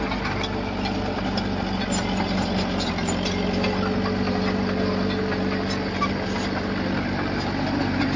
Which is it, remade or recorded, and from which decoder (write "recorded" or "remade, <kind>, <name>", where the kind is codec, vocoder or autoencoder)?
recorded